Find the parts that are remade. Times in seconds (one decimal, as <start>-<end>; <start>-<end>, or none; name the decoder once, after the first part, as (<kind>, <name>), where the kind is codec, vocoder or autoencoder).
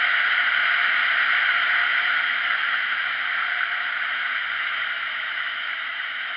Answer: 1.8-3.2 (autoencoder, DAC-VAE); 4.1-6.4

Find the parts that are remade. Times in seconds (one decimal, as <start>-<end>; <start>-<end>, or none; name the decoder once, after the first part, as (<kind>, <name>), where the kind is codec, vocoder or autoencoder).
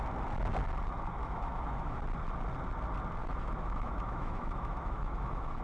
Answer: 1.2-2.0 (autoencoder, DAC-VAE); 3.2-5.6